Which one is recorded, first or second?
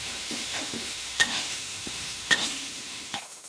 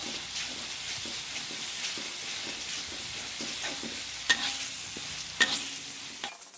second